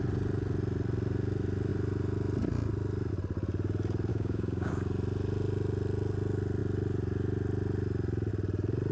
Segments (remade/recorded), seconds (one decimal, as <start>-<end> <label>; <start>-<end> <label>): 0.0-4.1 recorded; 4.1-4.7 remade; 4.7-8.9 recorded